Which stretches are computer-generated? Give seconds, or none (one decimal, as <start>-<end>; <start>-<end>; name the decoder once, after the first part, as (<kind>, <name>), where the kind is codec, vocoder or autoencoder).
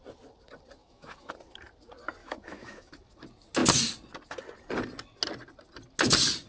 0.8-1.3 (autoencoder, DAC-VAE); 2.2-2.9